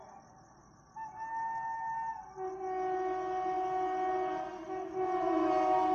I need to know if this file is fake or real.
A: real